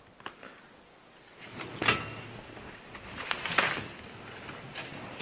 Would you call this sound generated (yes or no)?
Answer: no